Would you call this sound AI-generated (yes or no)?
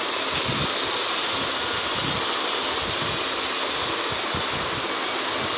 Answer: no